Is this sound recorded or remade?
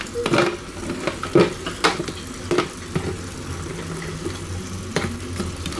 recorded